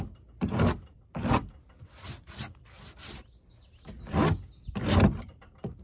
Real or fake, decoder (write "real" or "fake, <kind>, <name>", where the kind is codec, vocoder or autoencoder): real